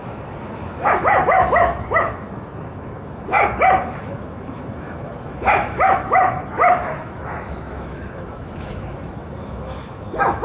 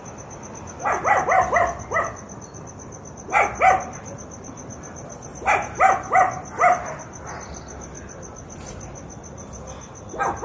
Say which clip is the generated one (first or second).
first